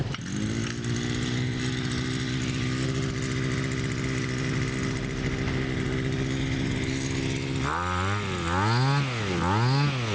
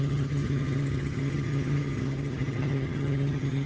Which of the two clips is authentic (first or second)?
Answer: first